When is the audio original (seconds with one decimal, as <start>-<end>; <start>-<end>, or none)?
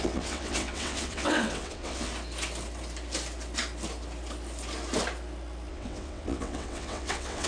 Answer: 2.1-5.7